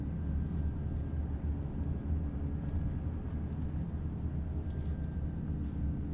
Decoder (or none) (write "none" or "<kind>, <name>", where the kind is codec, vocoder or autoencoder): none